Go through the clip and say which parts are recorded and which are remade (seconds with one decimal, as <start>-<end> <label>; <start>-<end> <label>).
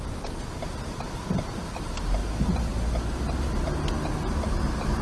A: 0.0-5.0 recorded